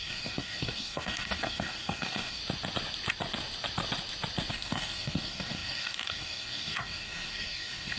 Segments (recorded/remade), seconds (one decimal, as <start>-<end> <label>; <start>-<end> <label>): 0.0-2.4 remade; 2.4-4.5 recorded; 4.5-8.0 remade